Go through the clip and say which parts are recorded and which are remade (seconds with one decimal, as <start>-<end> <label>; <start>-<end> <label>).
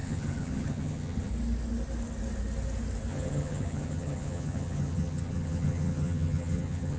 0.0-1.3 remade; 1.3-3.1 recorded; 3.1-7.0 remade